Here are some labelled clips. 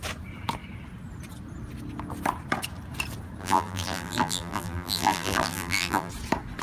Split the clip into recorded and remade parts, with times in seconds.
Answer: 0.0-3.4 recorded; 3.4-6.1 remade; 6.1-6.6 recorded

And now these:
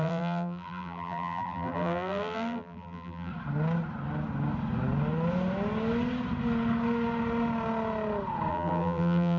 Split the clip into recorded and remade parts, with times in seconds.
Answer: 0.0-3.3 remade; 3.3-8.5 recorded; 8.5-9.4 remade

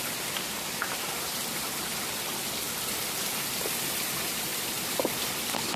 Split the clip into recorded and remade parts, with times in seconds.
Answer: 0.0-4.5 recorded; 4.5-5.2 remade; 5.2-5.8 recorded